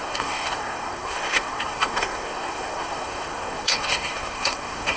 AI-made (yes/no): yes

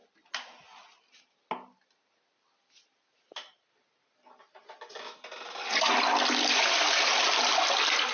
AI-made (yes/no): no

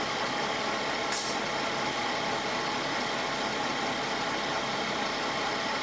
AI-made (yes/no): no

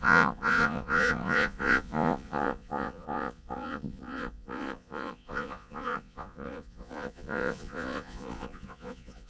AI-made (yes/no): yes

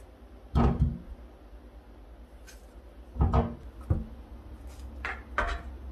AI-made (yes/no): no